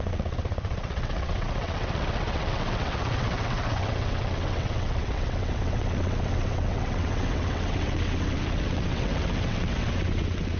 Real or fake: fake